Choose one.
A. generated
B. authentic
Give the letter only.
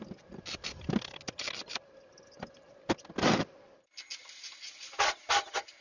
B